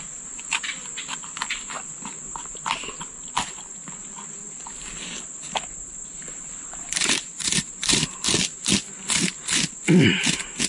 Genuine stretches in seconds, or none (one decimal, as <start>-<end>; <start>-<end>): 0.0-6.2; 8.2-10.7